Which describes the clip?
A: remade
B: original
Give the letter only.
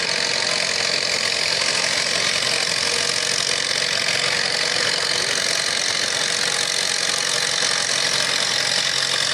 B